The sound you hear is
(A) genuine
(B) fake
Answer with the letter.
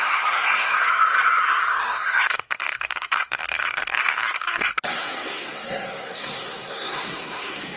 B